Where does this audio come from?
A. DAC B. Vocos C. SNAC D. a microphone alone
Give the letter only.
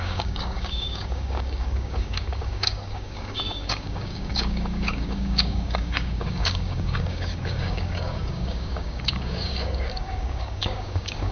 A